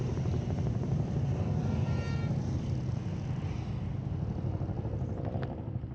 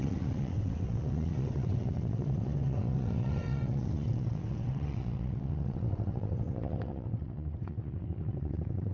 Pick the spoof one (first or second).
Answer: second